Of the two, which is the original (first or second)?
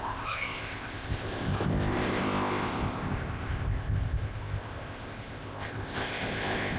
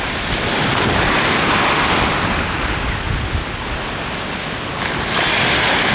second